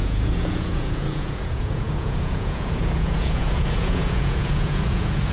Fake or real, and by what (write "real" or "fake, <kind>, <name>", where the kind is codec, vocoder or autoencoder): fake, vocoder, Vocos